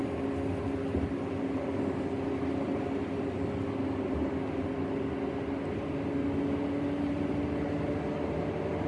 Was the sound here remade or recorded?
recorded